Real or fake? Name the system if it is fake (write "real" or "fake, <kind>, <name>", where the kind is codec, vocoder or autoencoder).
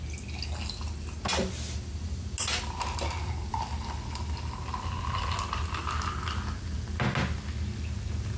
real